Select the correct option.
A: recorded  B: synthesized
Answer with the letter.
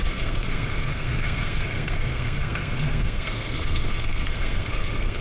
B